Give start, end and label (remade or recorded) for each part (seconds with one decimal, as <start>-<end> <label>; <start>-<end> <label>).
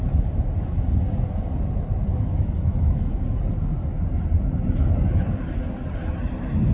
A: 0.0-2.1 recorded; 2.1-3.2 remade; 3.2-6.7 recorded